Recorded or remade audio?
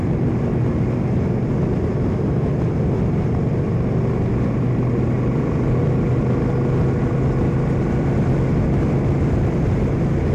recorded